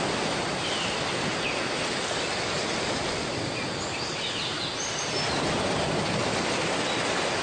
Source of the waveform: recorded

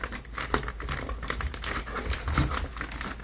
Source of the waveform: recorded